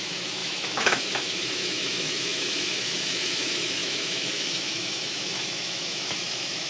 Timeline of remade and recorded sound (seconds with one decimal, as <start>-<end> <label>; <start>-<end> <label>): 0.0-6.7 remade